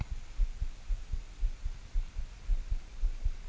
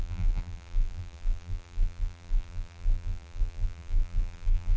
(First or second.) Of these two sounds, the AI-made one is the second